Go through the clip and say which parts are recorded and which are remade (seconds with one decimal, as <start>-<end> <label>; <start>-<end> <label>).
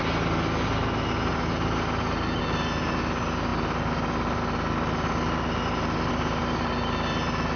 0.0-1.3 recorded; 1.3-2.4 remade; 2.4-7.6 recorded